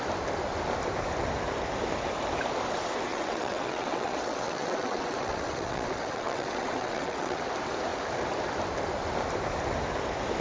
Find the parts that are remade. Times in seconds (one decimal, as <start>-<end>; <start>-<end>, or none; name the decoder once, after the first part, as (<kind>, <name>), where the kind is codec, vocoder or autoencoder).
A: 3.1-7.4 (vocoder, WaveNeXt)